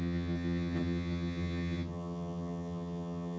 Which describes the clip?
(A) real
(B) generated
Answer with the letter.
B